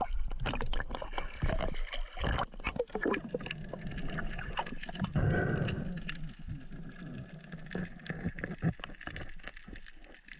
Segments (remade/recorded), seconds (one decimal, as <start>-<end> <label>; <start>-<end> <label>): 0.0-10.4 recorded